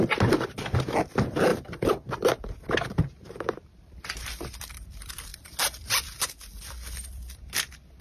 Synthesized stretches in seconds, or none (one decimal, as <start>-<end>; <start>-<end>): 1.5-4.2